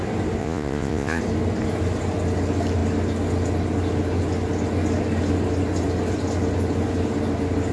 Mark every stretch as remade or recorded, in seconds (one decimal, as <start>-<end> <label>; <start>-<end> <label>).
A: 0.0-0.4 recorded; 0.4-1.2 remade; 1.2-7.7 recorded